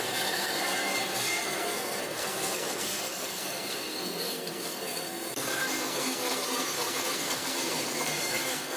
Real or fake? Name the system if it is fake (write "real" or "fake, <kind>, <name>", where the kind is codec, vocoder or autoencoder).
fake, codec, SNAC